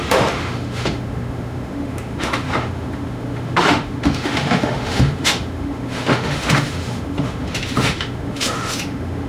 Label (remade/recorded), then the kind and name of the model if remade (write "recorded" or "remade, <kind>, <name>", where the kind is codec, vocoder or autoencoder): remade, autoencoder, DAC-VAE